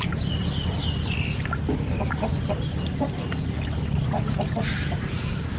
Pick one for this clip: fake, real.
real